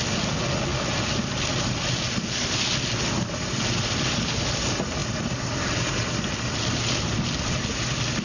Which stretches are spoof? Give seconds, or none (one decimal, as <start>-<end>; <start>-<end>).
none